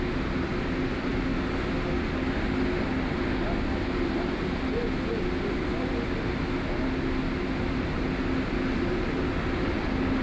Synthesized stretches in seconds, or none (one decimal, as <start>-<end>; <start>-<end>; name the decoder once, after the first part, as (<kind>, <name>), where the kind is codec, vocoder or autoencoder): none